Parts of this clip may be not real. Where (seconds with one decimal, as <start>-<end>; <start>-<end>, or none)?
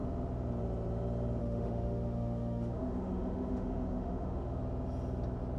1.4-4.6